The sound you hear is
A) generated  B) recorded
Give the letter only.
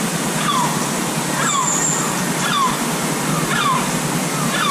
B